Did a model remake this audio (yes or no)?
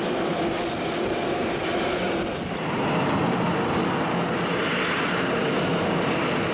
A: no